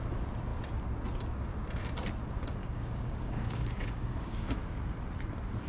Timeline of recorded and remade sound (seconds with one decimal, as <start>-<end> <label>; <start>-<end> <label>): 0.0-2.6 recorded; 2.6-4.8 remade; 4.8-5.7 recorded